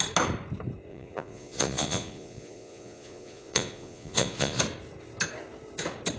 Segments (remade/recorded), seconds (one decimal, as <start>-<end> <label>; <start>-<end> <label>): 0.0-0.9 recorded; 0.9-4.6 remade; 4.6-6.2 recorded